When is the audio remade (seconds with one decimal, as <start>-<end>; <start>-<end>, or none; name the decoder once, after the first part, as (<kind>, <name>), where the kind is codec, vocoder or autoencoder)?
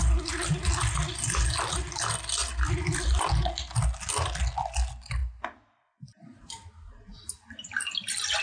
none